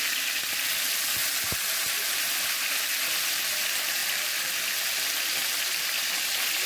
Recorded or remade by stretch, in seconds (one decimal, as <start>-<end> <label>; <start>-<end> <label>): 0.0-6.7 recorded